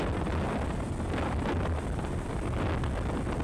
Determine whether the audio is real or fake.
real